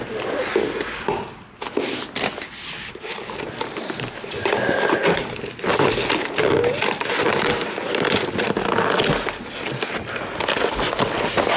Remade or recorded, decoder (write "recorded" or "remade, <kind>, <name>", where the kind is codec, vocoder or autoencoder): recorded